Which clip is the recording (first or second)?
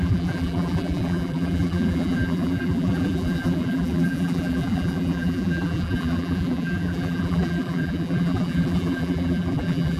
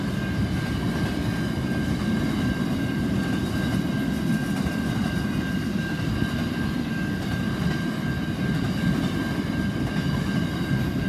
second